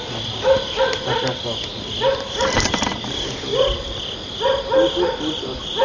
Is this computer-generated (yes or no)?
no